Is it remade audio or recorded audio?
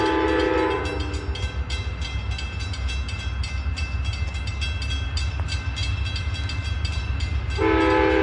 recorded